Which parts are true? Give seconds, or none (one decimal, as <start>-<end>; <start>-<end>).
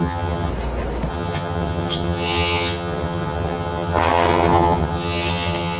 0.5-1.1